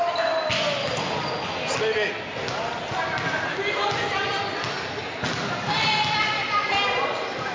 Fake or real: real